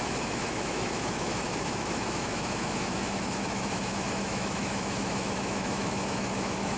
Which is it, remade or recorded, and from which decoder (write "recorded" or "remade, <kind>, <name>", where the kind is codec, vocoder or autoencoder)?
remade, autoencoder, DAC-VAE